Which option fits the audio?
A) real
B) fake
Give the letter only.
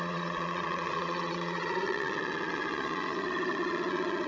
B